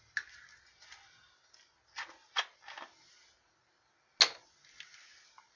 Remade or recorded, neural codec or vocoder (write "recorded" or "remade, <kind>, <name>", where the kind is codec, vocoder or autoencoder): recorded